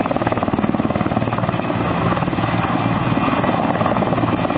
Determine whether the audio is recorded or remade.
recorded